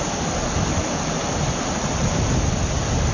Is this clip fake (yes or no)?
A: no